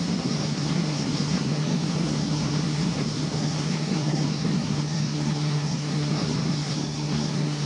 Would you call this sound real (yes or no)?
no